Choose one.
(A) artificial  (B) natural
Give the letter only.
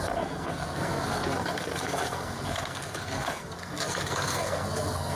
A